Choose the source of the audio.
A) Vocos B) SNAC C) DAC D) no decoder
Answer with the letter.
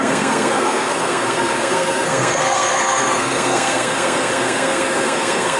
B